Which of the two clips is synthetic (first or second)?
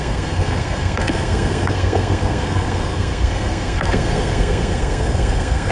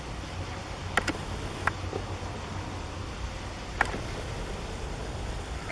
first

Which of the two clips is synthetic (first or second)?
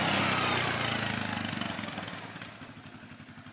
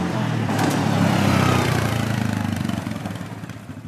second